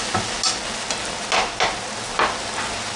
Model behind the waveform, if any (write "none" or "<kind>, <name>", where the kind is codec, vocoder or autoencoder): none